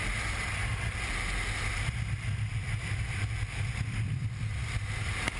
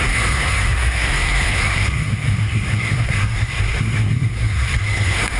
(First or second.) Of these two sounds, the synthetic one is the second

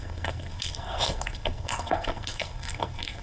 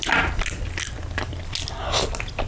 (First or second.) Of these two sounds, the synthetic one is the first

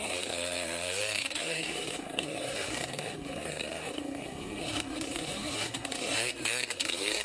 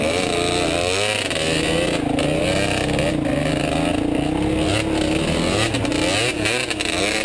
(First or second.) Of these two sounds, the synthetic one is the first